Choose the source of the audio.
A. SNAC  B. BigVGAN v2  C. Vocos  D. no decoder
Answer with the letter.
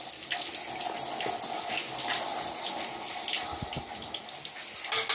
D